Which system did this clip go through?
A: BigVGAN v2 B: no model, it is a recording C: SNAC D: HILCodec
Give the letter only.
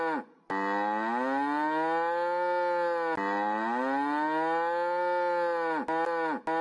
B